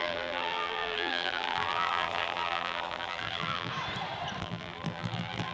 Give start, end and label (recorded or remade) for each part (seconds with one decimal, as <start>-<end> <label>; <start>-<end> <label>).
0.0-3.7 remade; 3.7-4.4 recorded; 4.4-5.5 remade